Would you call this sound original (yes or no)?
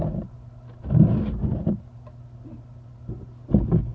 yes